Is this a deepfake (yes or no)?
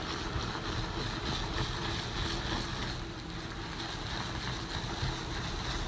no